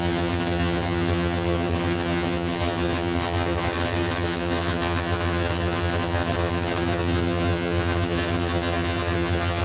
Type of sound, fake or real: fake